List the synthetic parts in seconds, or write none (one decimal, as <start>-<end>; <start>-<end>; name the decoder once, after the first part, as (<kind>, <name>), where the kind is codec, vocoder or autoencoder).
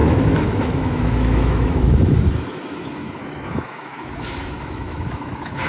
0.0-5.7 (autoencoder, DAC-VAE)